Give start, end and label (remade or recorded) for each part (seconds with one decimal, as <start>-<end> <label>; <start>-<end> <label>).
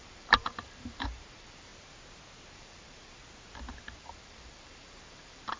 0.0-1.7 remade; 1.7-2.5 recorded; 2.5-3.2 remade; 3.2-4.0 recorded; 4.0-5.6 remade